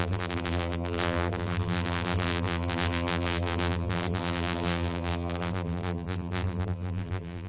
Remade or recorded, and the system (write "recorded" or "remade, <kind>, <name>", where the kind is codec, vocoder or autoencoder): remade, vocoder, BigVGAN v2